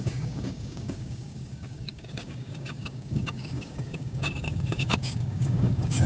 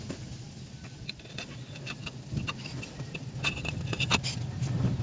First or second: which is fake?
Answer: first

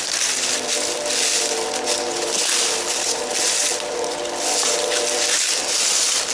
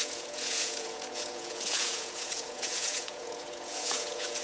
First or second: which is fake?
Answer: second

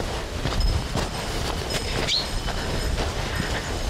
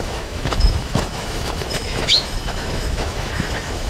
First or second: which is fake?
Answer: second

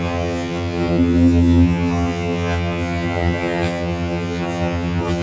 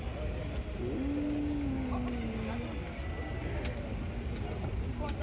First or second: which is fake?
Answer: first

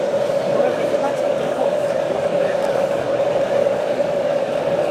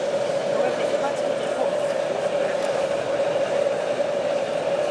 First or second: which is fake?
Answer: first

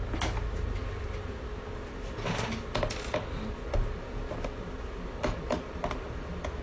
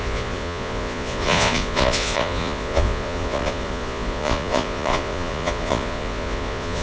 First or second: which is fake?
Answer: second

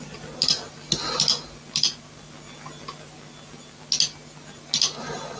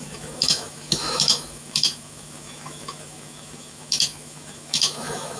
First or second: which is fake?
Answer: second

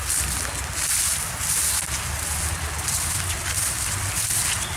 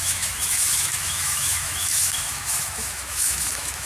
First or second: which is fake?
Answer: second